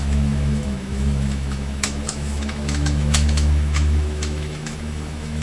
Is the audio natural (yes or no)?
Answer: no